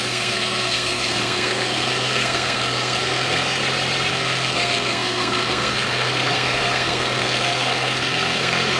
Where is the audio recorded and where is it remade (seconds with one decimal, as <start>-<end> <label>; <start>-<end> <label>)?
0.0-3.6 remade; 3.6-4.1 recorded; 4.1-8.8 remade